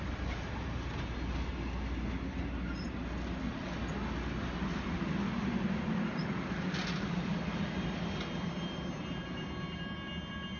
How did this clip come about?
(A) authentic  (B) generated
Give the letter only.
A